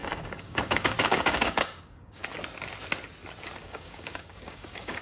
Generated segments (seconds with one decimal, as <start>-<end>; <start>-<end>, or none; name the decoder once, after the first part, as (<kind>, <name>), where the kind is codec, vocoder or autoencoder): 0.0-2.2 (codec, DAC); 3.6-5.0